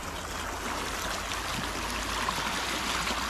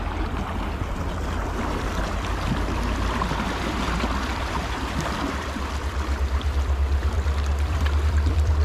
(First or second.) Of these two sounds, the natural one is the first